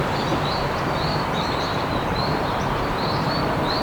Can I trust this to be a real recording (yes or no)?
no